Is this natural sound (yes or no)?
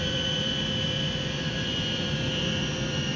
no